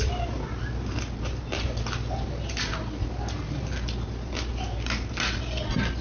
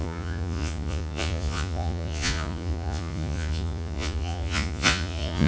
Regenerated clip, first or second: second